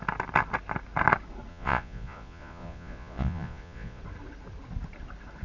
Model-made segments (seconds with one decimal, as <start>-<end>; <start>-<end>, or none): 1.5-4.0